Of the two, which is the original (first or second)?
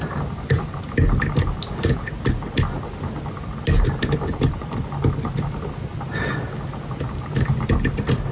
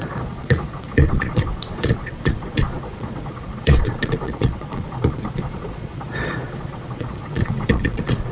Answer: first